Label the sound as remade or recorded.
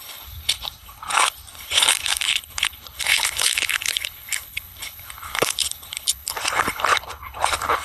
remade